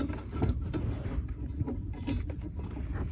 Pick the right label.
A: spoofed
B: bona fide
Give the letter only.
B